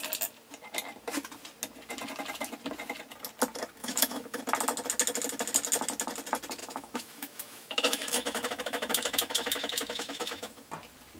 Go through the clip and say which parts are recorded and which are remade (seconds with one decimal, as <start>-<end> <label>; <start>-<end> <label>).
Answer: 0.0-3.8 recorded; 3.8-4.4 remade; 4.4-6.6 recorded; 6.6-10.7 remade; 10.7-11.2 recorded